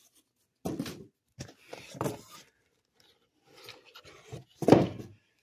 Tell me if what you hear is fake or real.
fake